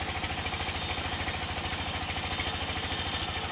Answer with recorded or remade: recorded